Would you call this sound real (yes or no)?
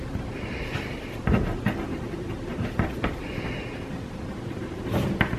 yes